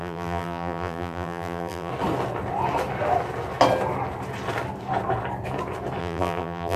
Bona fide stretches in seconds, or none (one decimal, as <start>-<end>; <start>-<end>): 1.9-6.0

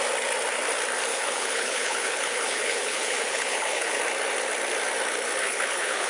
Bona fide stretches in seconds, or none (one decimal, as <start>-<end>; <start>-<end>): 0.0-1.1; 4.0-5.4

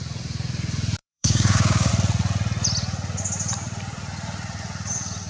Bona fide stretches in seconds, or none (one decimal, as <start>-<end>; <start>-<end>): 0.0-1.0; 1.9-5.3